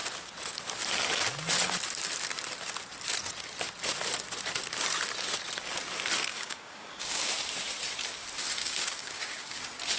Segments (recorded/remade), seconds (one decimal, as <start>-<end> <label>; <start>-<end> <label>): 0.0-6.3 recorded; 6.3-7.3 remade; 7.3-8.6 recorded; 8.6-9.6 remade; 9.6-10.0 recorded

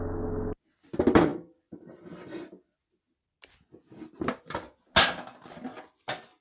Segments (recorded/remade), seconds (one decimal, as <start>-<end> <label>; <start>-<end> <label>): 0.0-6.4 recorded

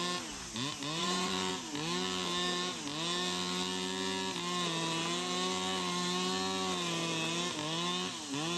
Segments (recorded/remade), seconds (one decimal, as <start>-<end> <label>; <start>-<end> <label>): 0.0-1.0 recorded; 1.0-1.5 remade; 1.5-8.6 recorded